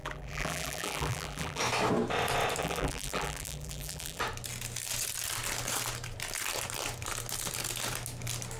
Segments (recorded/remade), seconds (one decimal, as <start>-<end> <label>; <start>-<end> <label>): 0.0-1.6 remade; 1.6-2.6 recorded; 2.6-4.2 remade; 4.2-8.6 recorded